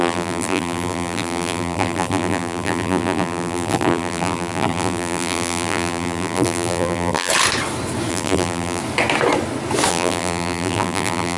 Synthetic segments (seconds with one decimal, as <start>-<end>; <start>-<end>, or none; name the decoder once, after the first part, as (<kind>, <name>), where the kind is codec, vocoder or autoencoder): 0.0-7.3 (vocoder, BigVGAN v2); 8.1-8.8; 9.9-11.4